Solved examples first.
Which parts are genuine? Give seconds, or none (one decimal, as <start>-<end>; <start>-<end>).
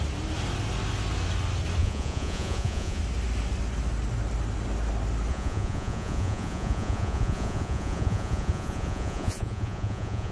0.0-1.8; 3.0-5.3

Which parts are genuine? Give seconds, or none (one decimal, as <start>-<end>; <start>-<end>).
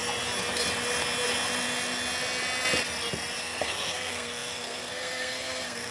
0.0-3.4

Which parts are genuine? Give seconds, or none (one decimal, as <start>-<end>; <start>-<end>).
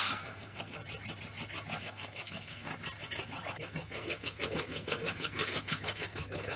0.8-1.8; 2.7-3.5